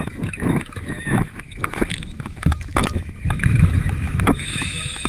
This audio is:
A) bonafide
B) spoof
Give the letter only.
B